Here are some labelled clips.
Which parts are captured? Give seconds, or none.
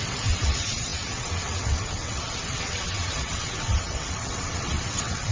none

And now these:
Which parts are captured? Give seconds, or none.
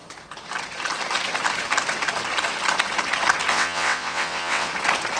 0.0-3.5; 4.7-5.2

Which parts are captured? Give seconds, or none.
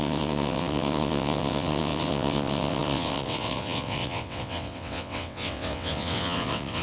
none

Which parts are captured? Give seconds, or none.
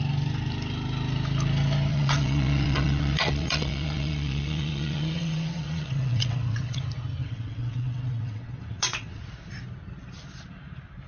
0.0-1.9; 6.8-7.2; 9.2-11.1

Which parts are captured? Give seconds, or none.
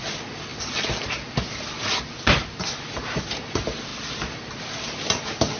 0.0-5.6